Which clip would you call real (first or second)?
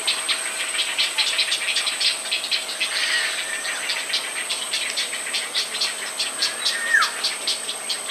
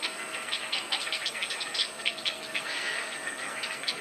first